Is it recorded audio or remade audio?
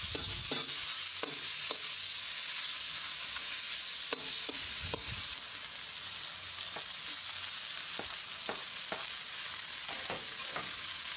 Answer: recorded